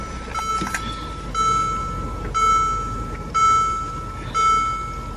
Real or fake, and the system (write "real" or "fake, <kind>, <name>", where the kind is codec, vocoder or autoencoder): real